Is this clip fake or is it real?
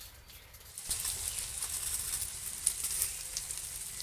real